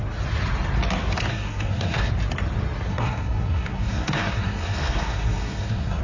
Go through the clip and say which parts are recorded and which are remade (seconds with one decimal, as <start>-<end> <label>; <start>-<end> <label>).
0.0-1.3 recorded; 1.3-2.1 remade; 2.1-2.9 recorded; 2.9-6.0 remade